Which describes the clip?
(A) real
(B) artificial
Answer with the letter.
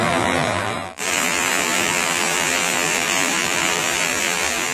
B